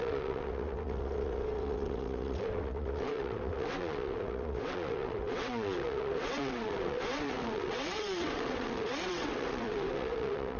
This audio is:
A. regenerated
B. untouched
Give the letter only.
A